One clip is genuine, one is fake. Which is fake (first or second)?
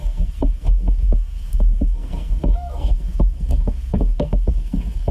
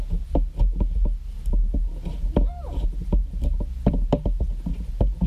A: first